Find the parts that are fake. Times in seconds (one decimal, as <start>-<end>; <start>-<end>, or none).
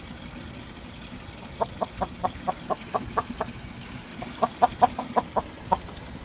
none